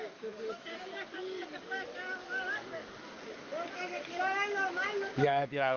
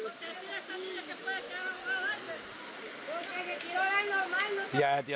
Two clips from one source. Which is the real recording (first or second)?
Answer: second